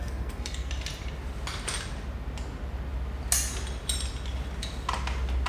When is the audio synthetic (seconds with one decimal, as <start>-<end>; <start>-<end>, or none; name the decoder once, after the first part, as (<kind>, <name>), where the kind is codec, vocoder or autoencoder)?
0.0-0.7 (codec, SNAC)